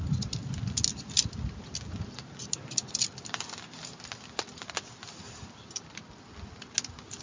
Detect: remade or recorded recorded